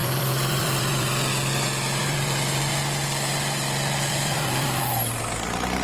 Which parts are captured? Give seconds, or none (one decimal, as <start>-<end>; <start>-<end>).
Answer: 1.3-2.0; 2.7-4.1; 4.8-5.8